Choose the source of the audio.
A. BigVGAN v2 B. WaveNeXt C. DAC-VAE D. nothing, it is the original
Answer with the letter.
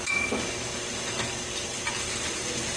D